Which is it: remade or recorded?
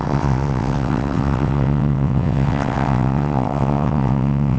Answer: remade